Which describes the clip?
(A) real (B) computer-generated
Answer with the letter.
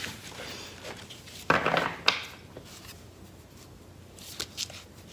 A